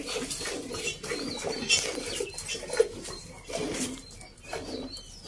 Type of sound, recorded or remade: recorded